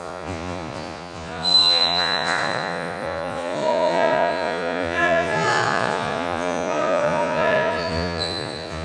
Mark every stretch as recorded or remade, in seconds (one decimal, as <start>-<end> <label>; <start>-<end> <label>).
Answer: 0.0-8.8 remade